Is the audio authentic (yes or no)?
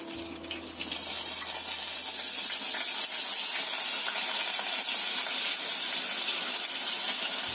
yes